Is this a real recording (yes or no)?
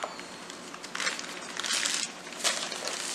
yes